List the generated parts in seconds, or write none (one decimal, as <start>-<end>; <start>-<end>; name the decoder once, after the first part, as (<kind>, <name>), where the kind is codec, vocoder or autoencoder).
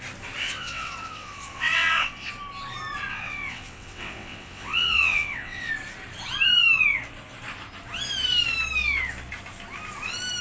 0.4-2.3 (vocoder, WaveNeXt); 3.1-5.7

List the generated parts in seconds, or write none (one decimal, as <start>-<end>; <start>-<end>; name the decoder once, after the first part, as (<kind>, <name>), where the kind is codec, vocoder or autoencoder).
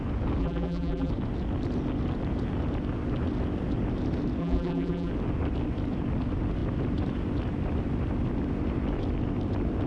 0.4-1.1 (vocoder, BigVGAN v2); 4.4-5.1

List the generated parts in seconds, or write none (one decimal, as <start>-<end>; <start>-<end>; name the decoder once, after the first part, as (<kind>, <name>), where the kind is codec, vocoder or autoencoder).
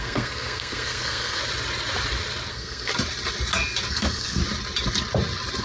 0.0-1.4 (codec, SNAC); 2.5-2.9; 3.9-4.4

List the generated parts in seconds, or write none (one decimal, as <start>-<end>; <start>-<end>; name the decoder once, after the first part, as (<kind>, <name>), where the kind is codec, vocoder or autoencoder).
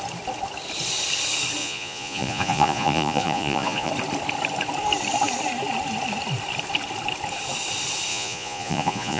1.6-3.9 (vocoder, Vocos); 8.1-9.2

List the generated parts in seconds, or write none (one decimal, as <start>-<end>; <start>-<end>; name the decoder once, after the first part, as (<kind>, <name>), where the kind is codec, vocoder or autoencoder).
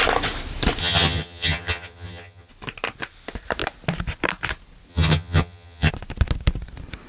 0.8-2.5 (vocoder, HiFi-GAN); 4.9-5.9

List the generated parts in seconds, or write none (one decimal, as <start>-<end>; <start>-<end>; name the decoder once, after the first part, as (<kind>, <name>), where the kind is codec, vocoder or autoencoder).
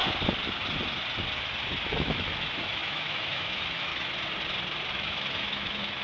1.9-3.9 (autoencoder, DAC-VAE); 4.9-6.0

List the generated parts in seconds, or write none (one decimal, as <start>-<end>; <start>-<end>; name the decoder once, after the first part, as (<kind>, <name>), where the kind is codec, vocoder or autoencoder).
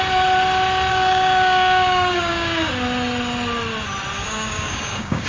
0.9-2.7 (codec, DAC); 4.2-5.3